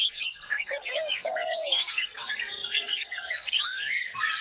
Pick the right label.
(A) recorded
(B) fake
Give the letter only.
B